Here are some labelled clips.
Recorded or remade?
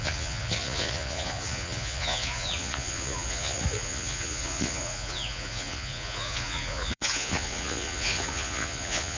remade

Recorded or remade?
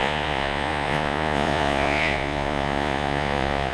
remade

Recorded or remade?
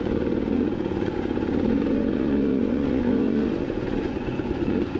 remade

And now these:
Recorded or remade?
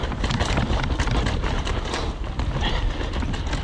recorded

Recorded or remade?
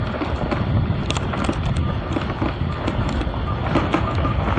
recorded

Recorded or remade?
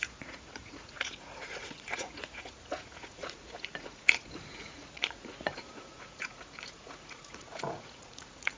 remade